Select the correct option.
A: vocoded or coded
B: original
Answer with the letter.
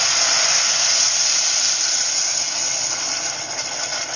B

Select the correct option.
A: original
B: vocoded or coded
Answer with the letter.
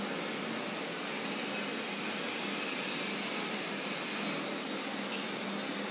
A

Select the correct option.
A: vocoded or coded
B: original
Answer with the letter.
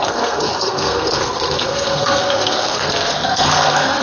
A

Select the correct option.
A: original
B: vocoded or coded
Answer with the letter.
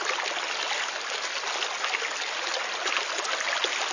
A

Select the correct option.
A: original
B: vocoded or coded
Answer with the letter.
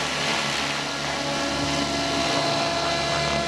A